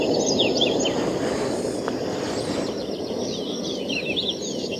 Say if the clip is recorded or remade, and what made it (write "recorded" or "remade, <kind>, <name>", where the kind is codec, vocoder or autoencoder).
recorded